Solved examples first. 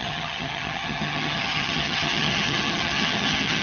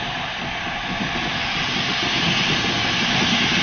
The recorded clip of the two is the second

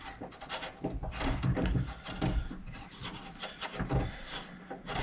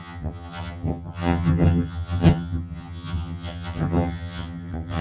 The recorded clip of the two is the first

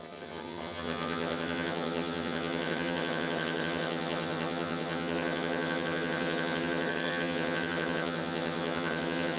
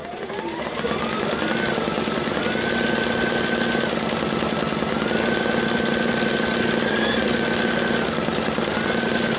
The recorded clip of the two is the second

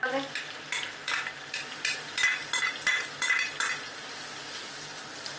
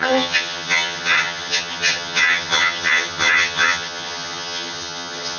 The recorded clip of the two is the first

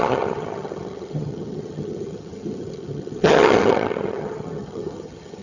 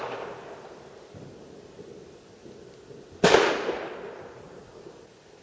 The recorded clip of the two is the second